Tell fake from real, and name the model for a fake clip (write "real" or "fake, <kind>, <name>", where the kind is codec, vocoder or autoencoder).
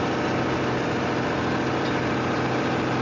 real